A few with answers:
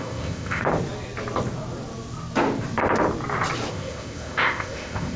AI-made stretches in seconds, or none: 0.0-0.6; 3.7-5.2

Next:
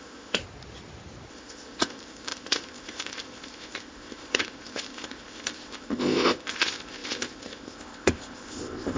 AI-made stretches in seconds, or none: 0.0-0.4; 1.3-9.0

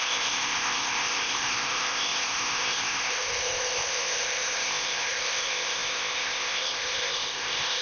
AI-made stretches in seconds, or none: 0.0-7.8

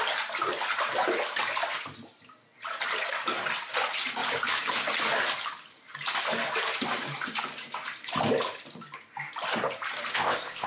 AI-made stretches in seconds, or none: 10.1-10.7

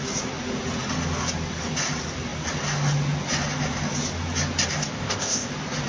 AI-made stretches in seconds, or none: 4.9-5.5

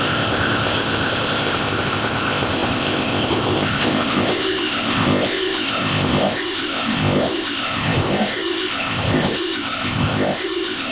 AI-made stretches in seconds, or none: 0.0-10.9

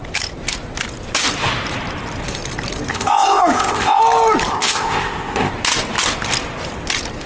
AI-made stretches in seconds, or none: 2.9-4.0; 4.5-5.5